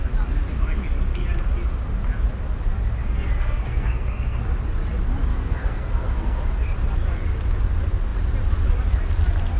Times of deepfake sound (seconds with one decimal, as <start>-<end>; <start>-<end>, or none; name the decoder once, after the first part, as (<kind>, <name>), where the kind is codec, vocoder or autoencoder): 3.0-4.4 (codec, SNAC); 5.3-6.4